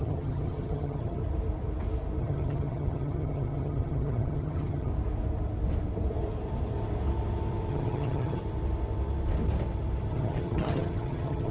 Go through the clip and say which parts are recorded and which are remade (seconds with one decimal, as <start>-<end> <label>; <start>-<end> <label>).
0.0-1.2 remade; 1.2-2.2 recorded; 2.2-4.9 remade; 4.9-7.7 recorded; 7.7-8.4 remade; 8.4-10.1 recorded; 10.1-11.5 remade